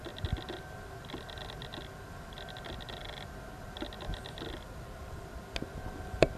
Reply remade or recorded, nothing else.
recorded